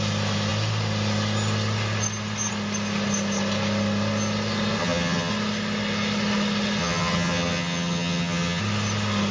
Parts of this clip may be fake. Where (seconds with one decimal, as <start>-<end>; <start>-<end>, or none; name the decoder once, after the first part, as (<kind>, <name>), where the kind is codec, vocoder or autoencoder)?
4.8-5.3 (vocoder, HiFi-GAN); 6.8-8.6